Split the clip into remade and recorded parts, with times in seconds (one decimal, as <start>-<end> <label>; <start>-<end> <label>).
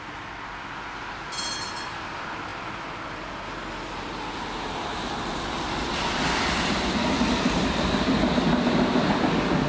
0.0-9.7 recorded